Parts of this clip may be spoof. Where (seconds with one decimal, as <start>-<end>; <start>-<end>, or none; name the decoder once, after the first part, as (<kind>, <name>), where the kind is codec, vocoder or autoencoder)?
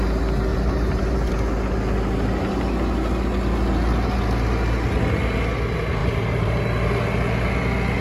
0.5-1.3 (vocoder, BigVGAN v2); 6.0-6.6